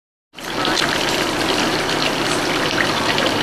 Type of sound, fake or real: real